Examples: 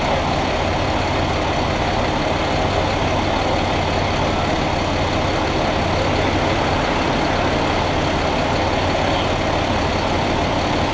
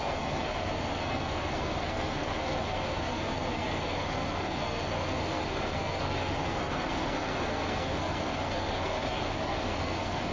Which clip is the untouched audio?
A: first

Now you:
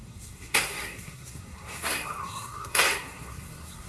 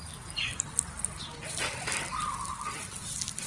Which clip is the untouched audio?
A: second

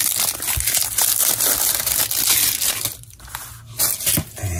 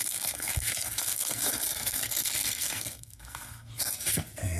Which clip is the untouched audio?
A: first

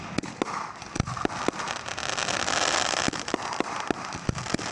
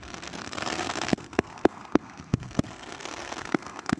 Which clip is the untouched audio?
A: first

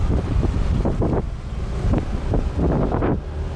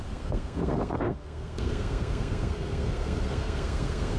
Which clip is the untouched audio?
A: first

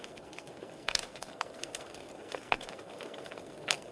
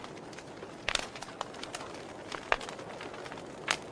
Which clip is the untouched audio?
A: second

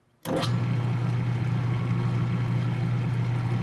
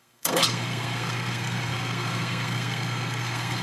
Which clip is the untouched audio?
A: first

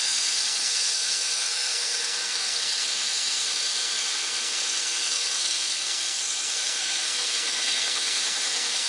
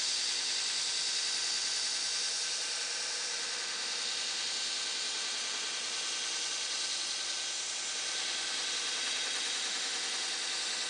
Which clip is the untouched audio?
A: second